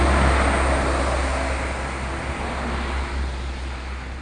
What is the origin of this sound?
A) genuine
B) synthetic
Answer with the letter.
A